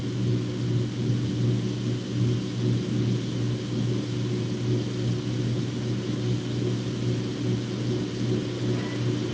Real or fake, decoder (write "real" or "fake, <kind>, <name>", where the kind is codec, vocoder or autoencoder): real